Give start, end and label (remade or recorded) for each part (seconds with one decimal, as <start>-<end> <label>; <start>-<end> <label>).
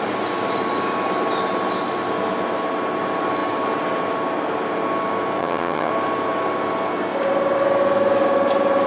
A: 0.0-5.4 recorded; 5.4-5.9 remade; 5.9-8.9 recorded